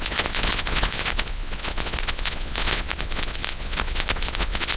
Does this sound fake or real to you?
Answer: fake